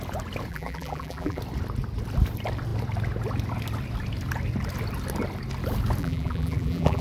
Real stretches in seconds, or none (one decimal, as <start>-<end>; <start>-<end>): 0.0-0.5; 1.4-6.0